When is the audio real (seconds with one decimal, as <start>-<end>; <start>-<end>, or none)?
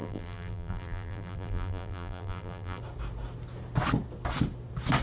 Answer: 2.8-5.0